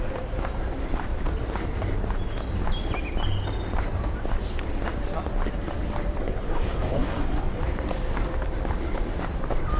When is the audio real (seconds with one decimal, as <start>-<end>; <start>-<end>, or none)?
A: 0.0-6.2; 7.6-9.8